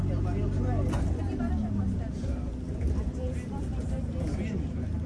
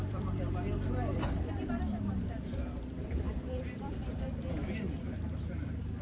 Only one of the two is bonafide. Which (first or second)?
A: first